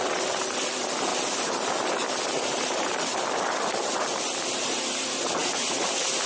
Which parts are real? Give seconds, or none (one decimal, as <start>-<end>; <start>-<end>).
1.1-2.8; 5.4-6.3